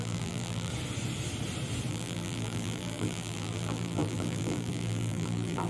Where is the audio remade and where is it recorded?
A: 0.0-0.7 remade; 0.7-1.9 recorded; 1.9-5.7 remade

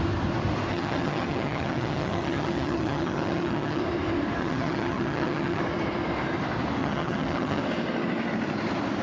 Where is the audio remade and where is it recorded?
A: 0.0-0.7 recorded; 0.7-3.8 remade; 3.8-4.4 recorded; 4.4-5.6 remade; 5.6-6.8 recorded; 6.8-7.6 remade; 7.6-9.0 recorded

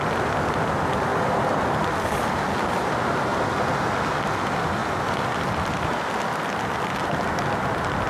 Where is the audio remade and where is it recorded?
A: 0.0-1.1 recorded; 1.1-2.9 remade; 2.9-4.8 recorded; 4.8-6.4 remade; 6.4-8.1 recorded